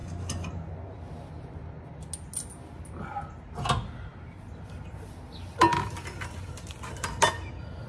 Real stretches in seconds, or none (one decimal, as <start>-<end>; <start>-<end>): 0.0-7.9